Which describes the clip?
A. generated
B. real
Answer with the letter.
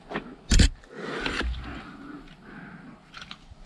B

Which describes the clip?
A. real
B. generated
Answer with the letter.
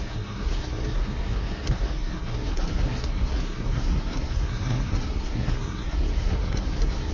B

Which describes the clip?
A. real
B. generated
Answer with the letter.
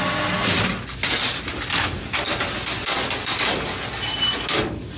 A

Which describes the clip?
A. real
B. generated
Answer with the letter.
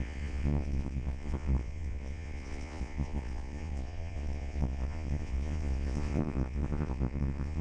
B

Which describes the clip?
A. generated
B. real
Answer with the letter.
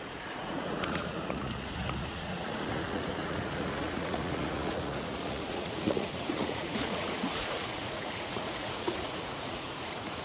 A